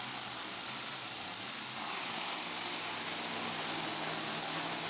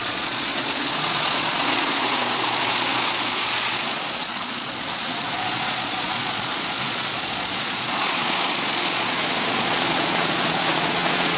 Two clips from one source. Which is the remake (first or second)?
second